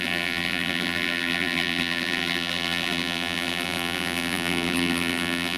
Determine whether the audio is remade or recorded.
remade